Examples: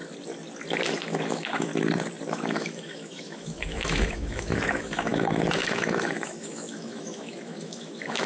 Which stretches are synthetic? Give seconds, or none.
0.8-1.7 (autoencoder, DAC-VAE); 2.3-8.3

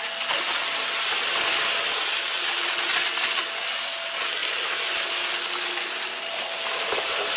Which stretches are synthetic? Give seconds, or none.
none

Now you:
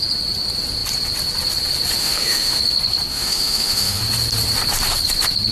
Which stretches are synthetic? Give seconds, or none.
2.0-2.6 (autoencoder, DAC-VAE); 3.1-4.0

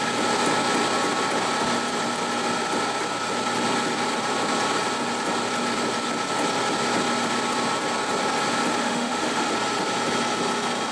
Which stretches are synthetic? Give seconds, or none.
8.8-9.5 (autoencoder, DAC-VAE)

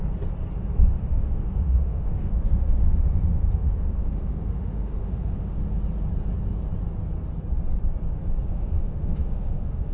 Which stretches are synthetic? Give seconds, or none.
1.0-5.6 (autoencoder, DAC-VAE); 8.5-9.9

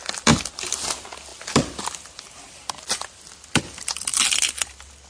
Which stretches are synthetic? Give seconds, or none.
none